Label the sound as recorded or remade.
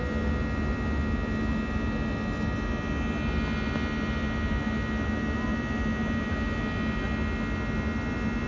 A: recorded